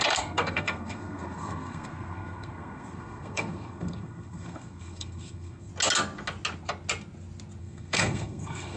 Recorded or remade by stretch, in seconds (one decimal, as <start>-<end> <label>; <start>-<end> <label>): 0.0-5.7 remade; 5.7-7.6 recorded; 7.6-8.8 remade